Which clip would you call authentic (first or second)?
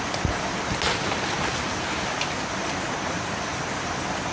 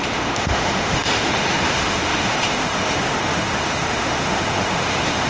first